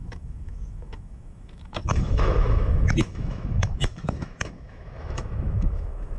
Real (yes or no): no